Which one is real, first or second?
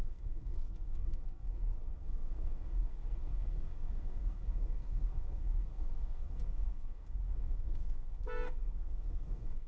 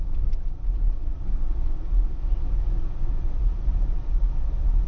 second